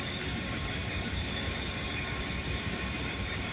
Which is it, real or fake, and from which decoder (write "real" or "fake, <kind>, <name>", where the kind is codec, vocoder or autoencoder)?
fake, codec, DAC